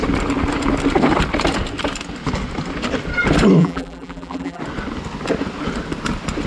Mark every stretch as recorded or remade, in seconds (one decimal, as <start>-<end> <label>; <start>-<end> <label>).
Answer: 0.0-3.6 recorded; 3.6-4.6 remade; 4.6-6.5 recorded